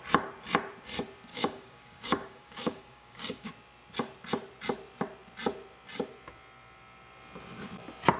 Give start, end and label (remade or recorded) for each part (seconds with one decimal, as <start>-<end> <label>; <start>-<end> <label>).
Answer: 0.0-1.3 recorded; 1.3-3.5 remade; 3.5-8.2 recorded